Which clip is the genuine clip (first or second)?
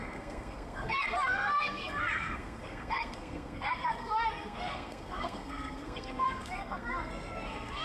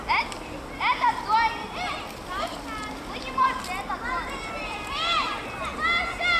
second